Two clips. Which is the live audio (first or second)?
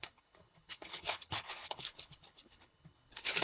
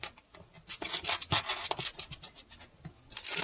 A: second